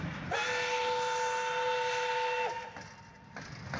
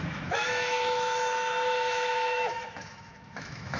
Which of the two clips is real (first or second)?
first